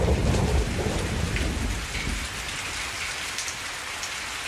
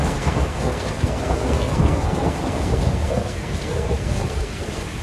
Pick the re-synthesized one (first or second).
second